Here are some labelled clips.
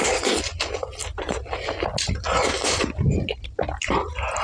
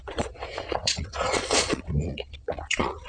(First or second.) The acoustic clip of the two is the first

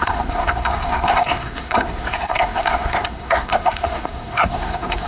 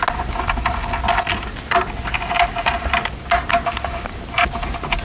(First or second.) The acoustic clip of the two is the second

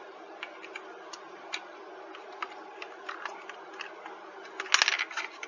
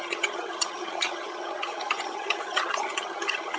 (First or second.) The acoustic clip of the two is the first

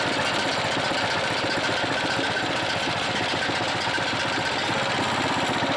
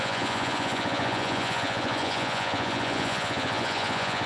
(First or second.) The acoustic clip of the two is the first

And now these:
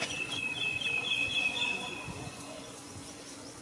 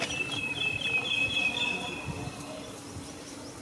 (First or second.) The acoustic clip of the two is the second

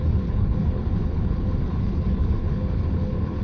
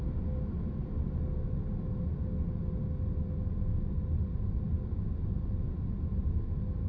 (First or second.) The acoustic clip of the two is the second